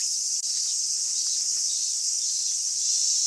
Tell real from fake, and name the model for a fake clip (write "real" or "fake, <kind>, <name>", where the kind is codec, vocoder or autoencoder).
real